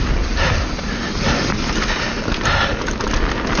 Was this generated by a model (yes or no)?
no